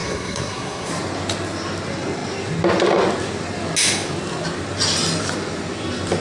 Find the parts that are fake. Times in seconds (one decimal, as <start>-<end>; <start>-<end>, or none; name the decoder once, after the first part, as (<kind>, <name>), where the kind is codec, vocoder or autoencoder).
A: 0.0-0.9 (codec, SNAC)